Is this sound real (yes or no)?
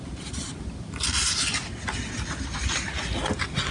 yes